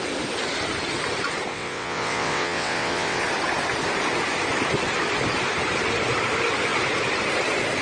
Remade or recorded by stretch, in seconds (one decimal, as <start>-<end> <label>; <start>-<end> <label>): 0.0-1.5 recorded; 1.5-3.2 remade; 3.2-7.8 recorded